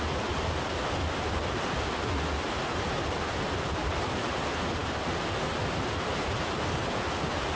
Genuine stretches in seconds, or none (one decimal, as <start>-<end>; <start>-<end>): 0.0-7.6